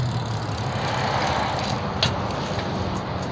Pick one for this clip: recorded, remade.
recorded